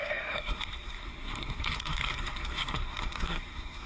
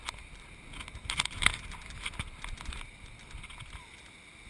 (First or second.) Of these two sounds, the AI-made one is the first